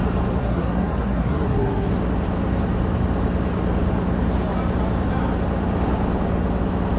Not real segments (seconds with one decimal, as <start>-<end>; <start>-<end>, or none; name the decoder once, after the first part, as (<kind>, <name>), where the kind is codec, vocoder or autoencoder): 0.4-1.9 (codec, SNAC)